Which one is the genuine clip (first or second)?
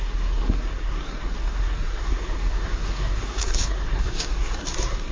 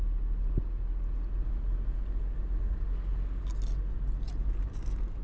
second